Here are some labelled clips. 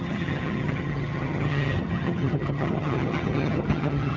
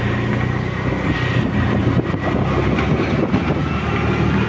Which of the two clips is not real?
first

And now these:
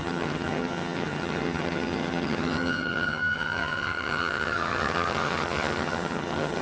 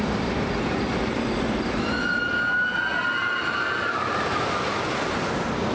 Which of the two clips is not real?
first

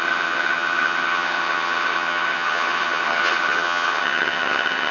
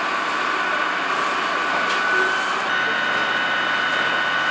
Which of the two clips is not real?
first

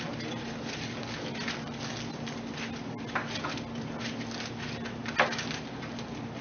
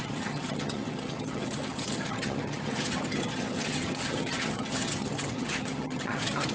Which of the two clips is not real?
second